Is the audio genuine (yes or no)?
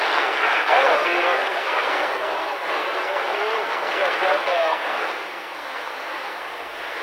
no